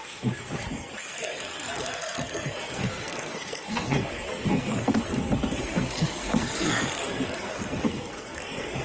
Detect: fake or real fake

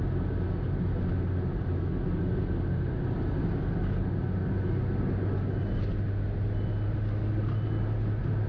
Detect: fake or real real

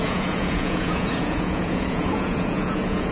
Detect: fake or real fake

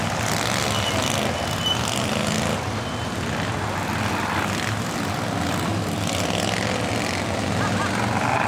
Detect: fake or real real